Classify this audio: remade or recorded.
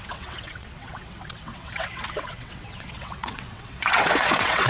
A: remade